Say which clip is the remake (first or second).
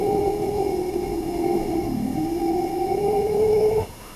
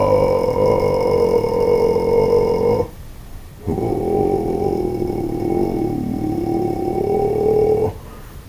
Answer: first